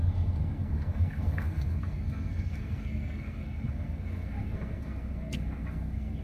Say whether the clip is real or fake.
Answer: fake